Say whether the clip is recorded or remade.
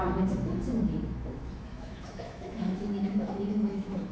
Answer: remade